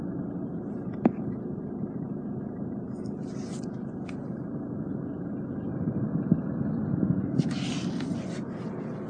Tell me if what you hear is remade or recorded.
recorded